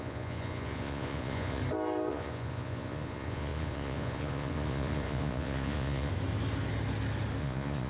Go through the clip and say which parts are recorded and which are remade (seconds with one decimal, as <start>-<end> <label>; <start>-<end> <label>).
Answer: 0.0-1.6 remade; 1.6-2.1 recorded; 2.1-6.1 remade; 6.1-7.4 recorded; 7.4-7.9 remade